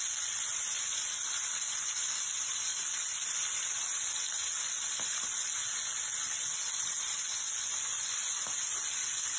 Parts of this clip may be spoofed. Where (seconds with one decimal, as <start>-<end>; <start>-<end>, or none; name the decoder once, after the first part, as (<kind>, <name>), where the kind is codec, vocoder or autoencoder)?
none